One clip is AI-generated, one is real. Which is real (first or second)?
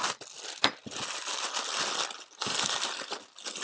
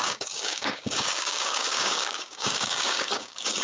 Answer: first